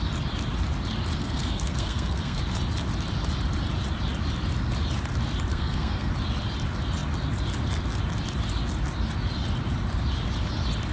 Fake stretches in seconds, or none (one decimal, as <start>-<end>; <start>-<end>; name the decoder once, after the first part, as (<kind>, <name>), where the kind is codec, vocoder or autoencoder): 1.2-2.4 (codec, SNAC); 5.5-6.1